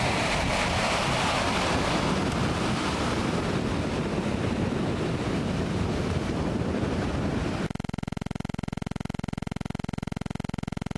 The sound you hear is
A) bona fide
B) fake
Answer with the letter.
A